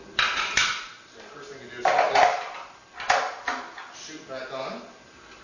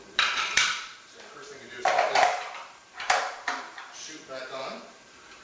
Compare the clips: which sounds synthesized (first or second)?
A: second